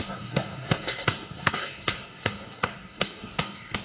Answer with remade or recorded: remade